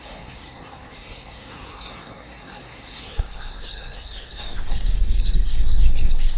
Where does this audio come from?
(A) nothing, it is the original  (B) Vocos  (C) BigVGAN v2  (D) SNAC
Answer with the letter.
D